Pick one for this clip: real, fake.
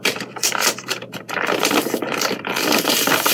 fake